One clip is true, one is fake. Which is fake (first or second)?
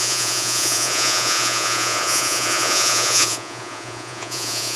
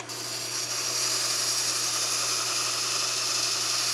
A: first